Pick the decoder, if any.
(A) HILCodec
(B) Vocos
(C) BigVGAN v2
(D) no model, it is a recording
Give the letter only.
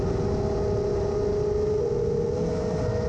D